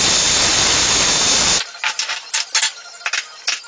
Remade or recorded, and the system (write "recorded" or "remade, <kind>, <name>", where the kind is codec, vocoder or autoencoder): recorded